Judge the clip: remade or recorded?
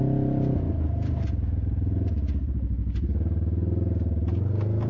recorded